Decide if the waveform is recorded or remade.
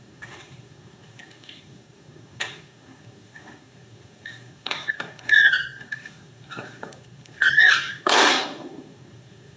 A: remade